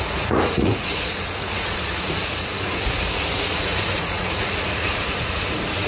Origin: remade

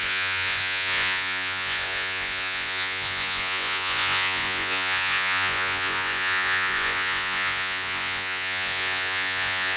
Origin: remade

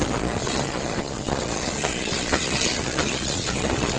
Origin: remade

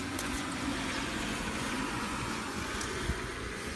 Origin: remade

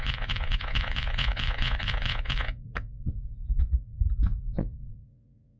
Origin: remade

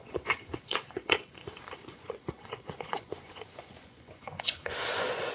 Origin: remade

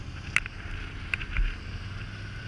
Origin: recorded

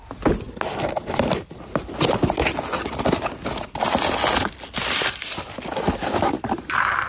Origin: recorded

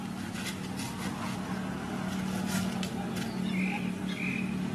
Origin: recorded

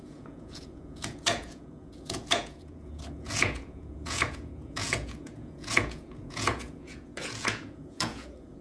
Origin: remade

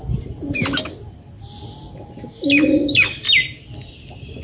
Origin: recorded